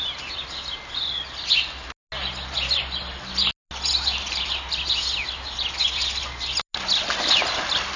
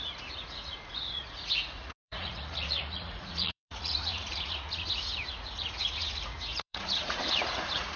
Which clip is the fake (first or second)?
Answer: second